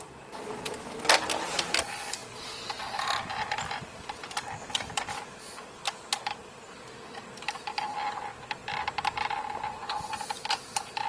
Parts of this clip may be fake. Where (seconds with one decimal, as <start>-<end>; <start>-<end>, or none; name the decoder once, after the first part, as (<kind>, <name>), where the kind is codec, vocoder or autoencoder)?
0.0-2.2 (vocoder, BigVGAN v2); 2.8-11.1